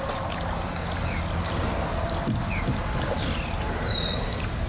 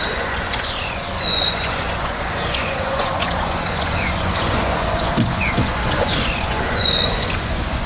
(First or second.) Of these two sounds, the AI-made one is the second